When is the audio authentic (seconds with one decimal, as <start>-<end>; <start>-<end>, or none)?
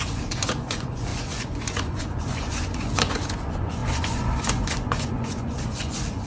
none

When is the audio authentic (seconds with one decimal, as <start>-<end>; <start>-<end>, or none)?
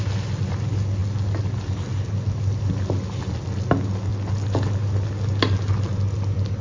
0.0-6.6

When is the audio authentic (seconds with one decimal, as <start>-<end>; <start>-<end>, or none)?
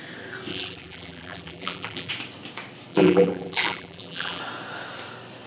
0.0-0.5; 2.1-2.9; 4.4-5.5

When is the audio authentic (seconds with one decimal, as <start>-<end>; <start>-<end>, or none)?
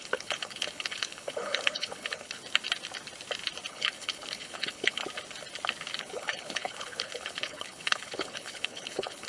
2.4-3.7; 5.0-6.0